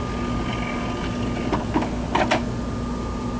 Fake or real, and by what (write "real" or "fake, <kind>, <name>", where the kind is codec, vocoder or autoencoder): real